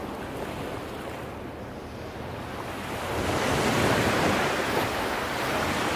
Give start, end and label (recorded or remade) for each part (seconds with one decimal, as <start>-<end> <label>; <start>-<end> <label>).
0.0-6.0 recorded